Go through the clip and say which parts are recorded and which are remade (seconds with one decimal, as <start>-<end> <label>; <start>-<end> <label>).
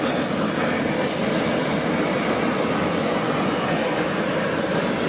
0.0-2.9 recorded; 2.9-4.2 remade; 4.2-5.1 recorded